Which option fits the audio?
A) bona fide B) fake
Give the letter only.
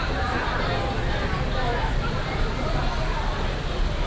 A